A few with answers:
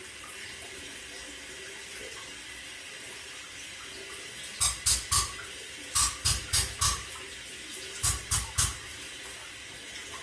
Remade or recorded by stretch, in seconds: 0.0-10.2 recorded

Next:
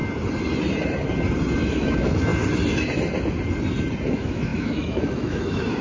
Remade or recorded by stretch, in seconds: 0.0-1.7 recorded; 1.7-2.3 remade; 2.3-4.1 recorded; 4.1-5.8 remade

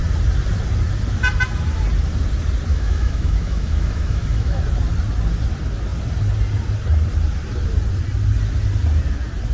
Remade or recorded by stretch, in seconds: 0.0-2.7 recorded; 2.7-4.6 remade; 4.6-9.5 recorded

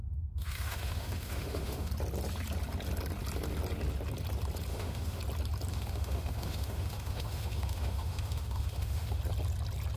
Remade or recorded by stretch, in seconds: 0.0-1.9 remade; 1.9-4.7 recorded; 4.7-5.2 remade; 5.2-5.7 recorded; 5.7-9.2 remade; 9.2-10.0 recorded

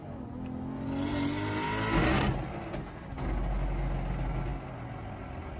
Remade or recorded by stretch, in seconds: 0.0-5.6 recorded

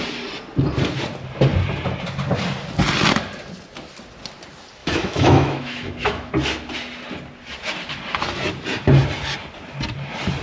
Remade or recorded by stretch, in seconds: 0.0-4.8 recorded; 4.8-6.3 remade; 6.3-10.4 recorded

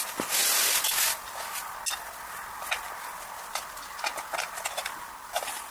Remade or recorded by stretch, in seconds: 0.0-5.7 recorded

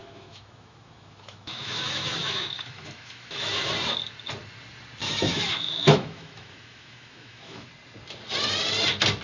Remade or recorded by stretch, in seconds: 0.0-3.7 remade; 3.7-5.0 recorded; 5.0-7.7 remade; 7.7-9.2 recorded